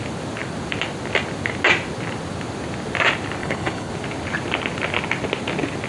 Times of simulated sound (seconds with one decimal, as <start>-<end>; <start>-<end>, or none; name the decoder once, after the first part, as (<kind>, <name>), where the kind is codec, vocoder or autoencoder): 3.4-3.9 (codec, HILCodec)

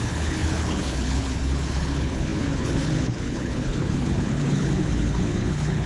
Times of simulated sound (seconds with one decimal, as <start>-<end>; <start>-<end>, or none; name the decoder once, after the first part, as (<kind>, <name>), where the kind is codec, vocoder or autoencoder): 0.0-5.9 (codec, HILCodec)

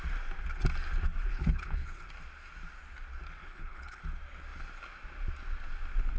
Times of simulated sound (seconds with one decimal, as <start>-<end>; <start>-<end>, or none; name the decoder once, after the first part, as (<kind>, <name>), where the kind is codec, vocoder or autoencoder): 1.3-2.1 (codec, HILCodec); 3.4-4.0